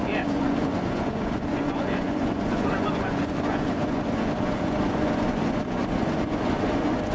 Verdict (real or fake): fake